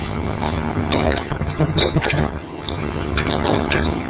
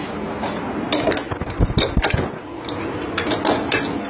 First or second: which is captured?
second